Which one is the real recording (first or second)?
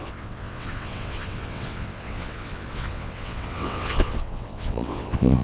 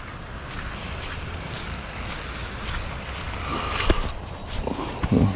second